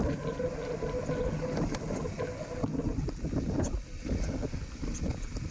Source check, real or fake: real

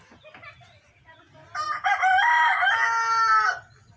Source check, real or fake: real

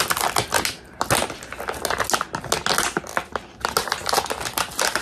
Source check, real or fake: real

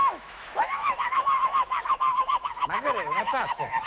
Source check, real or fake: fake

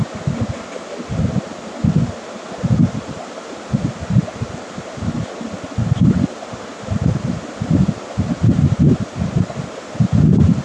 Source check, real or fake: real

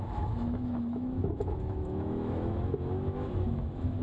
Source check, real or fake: fake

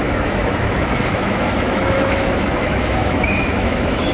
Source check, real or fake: fake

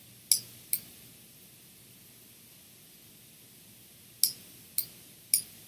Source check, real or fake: real